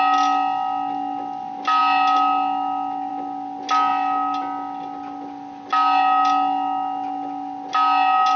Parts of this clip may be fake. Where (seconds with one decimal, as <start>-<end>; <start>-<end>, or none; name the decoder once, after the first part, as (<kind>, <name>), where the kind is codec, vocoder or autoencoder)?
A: none